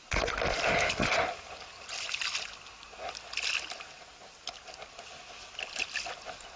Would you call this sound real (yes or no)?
yes